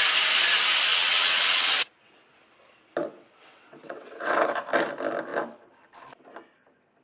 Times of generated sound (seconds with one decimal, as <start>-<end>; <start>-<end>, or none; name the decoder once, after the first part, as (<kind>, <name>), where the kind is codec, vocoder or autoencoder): 0.9-1.9 (vocoder, WaveNeXt); 3.0-4.5

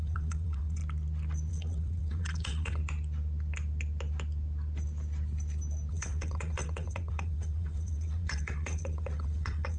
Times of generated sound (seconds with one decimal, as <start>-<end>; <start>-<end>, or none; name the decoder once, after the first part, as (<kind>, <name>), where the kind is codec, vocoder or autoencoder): 0.0-0.8 (vocoder, WaveNeXt); 1.5-2.8; 5.9-9.8

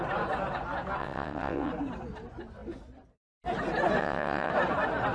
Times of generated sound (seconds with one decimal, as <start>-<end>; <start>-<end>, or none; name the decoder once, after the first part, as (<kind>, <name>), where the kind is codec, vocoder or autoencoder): 1.0-1.7 (vocoder, WaveNeXt); 4.0-4.5

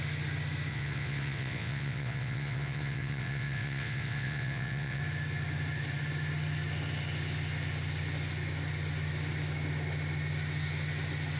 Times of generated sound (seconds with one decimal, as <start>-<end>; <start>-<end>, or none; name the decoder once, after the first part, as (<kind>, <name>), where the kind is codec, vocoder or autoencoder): 0.7-5.0 (vocoder, WaveNeXt)

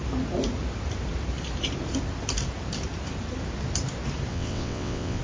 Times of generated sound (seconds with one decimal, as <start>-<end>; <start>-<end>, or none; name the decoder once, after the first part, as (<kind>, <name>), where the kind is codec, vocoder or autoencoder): 4.3-5.2 (vocoder, WaveNeXt)

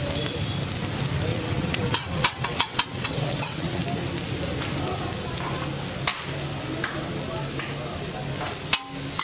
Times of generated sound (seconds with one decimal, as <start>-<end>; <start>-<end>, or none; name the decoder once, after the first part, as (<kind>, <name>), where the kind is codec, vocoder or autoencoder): 1.3-3.8 (vocoder, WaveNeXt)

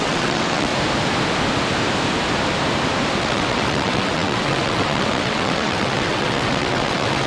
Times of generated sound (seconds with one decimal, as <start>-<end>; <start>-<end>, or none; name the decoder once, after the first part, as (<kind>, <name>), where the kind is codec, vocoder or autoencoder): 0.0-0.7 (vocoder, WaveNeXt); 3.2-7.3

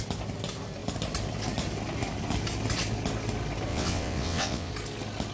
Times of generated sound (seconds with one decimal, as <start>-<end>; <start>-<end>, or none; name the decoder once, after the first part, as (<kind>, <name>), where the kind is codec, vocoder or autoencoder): 3.7-4.7 (vocoder, WaveNeXt)